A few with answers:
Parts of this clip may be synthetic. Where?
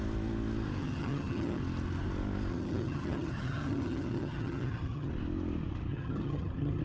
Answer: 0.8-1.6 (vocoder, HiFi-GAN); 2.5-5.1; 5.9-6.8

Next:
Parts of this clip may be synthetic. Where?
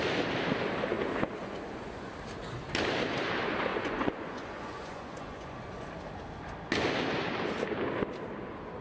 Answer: 1.4-2.1 (vocoder, Vocos); 3.7-5.9